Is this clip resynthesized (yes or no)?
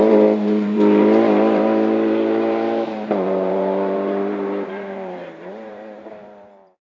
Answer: yes